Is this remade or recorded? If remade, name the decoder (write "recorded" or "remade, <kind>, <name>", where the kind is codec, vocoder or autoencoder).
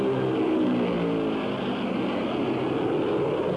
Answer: recorded